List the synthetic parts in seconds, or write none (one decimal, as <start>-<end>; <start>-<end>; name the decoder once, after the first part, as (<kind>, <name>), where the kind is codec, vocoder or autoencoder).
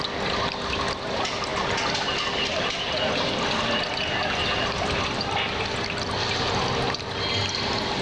none